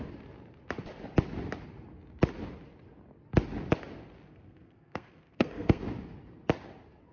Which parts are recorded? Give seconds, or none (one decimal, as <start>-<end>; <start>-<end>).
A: 0.0-4.3; 5.8-7.1